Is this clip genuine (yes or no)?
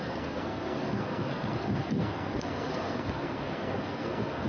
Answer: no